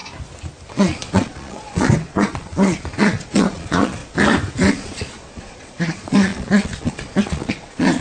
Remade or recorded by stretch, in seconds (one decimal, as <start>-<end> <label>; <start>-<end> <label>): 0.0-0.7 recorded; 0.7-4.0 remade; 4.0-4.7 recorded; 4.7-8.0 remade